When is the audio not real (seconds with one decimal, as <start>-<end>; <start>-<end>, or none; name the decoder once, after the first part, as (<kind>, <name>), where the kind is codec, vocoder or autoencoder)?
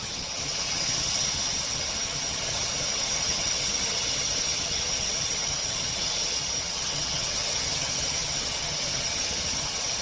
0.0-10.0 (vocoder, HiFi-GAN)